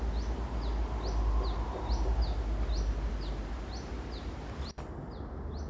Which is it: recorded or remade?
recorded